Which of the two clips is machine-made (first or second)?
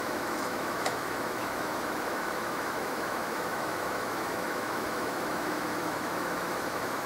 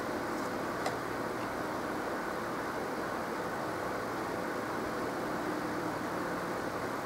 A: first